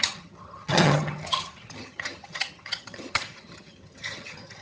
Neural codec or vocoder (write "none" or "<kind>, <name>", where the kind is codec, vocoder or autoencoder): vocoder, HiFi-GAN